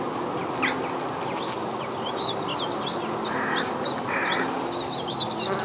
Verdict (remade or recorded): recorded